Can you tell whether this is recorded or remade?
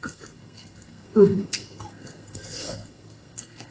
remade